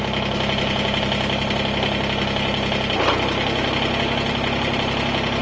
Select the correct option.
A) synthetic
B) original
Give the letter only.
B